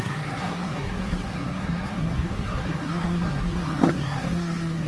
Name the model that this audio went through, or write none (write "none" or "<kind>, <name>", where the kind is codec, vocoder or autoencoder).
codec, SNAC